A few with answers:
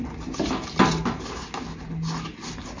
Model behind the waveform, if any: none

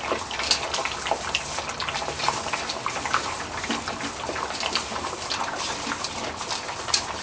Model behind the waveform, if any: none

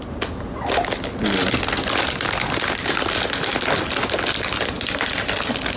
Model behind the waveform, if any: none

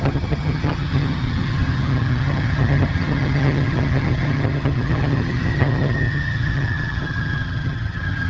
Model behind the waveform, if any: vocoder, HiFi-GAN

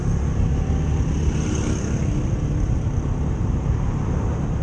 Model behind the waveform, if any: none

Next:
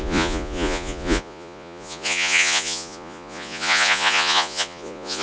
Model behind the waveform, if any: vocoder, Vocos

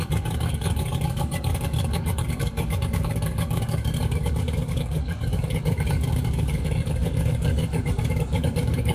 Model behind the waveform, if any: codec, DAC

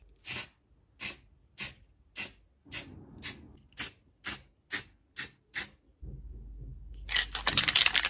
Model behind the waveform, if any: none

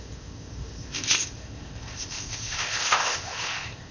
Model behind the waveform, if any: codec, ZipCodec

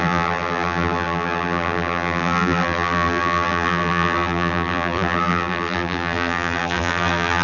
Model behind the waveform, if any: vocoder, BigVGAN v2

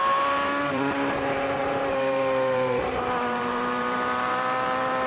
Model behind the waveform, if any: vocoder, BigVGAN v2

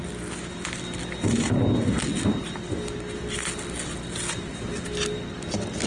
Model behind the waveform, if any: none